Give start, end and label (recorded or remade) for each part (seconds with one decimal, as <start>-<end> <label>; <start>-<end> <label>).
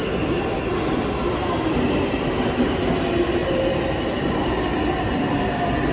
0.0-3.4 recorded; 3.4-3.9 remade; 3.9-5.9 recorded